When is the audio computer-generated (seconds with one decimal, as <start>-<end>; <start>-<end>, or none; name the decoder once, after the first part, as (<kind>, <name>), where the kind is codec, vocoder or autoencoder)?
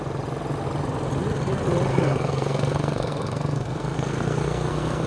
1.9-5.1 (codec, SNAC)